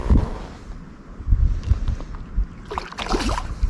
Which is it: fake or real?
real